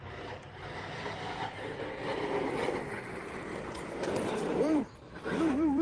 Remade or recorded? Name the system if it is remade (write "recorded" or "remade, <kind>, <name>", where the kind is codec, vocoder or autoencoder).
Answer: remade, vocoder, BigVGAN v2